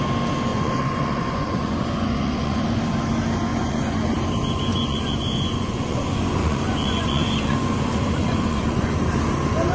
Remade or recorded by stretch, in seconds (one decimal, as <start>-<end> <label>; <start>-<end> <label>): 0.0-0.5 recorded; 0.5-2.8 remade; 2.8-3.5 recorded; 3.5-4.1 remade; 4.1-4.7 recorded; 4.7-8.9 remade; 8.9-9.7 recorded